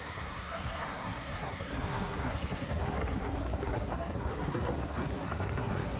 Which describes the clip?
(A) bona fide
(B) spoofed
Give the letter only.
B